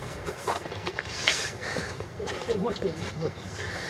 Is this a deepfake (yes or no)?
yes